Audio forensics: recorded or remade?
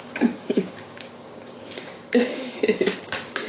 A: remade